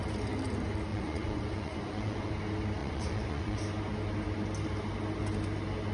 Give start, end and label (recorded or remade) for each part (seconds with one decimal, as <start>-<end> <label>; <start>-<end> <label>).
0.0-0.9 recorded; 0.9-2.3 remade; 2.3-2.8 recorded; 2.8-3.6 remade; 3.6-5.9 recorded